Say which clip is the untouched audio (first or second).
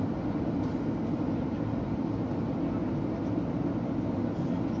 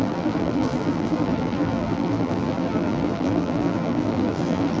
first